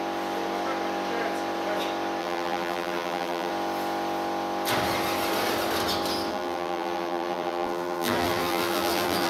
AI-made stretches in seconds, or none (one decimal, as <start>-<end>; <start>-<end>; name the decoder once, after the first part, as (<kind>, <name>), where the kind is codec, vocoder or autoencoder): 2.2-3.5 (vocoder, BigVGAN v2); 6.3-9.3